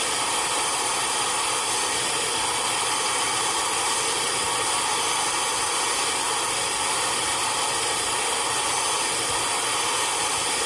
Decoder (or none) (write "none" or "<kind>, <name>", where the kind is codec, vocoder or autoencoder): none